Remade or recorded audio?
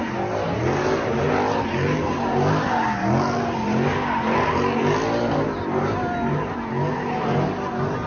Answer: recorded